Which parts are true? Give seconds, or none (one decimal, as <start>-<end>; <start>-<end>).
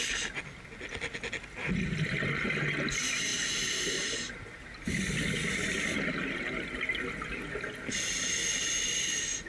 0.0-9.5